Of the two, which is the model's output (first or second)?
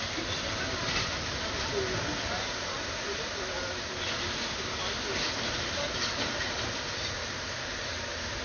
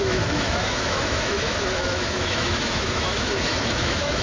second